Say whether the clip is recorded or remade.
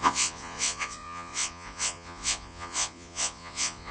remade